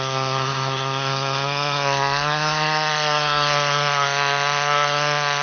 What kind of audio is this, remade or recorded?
remade